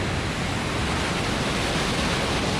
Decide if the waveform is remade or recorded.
recorded